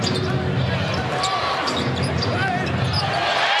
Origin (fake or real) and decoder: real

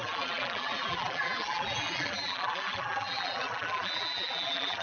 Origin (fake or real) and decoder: fake, vocoder, BigVGAN v2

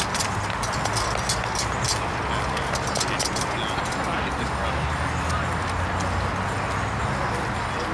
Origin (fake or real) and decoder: real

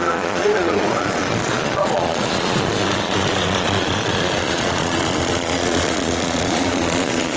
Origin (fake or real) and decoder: fake, vocoder, Vocos